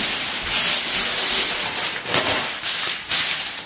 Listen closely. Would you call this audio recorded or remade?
recorded